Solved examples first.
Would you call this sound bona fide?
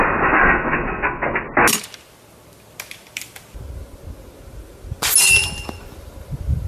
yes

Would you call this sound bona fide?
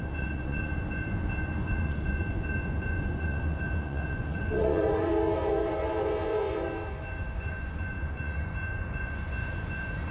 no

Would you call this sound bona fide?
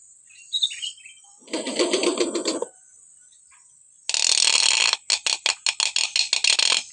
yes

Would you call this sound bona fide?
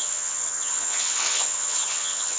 no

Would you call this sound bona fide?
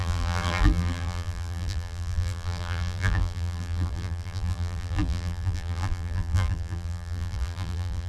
no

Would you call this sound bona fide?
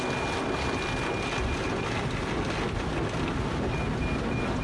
yes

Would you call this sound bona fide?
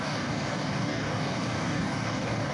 no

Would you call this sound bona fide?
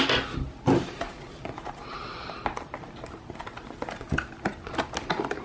yes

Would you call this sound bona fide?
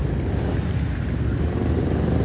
yes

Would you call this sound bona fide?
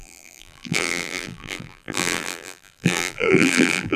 no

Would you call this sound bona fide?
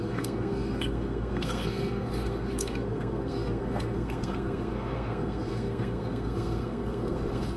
no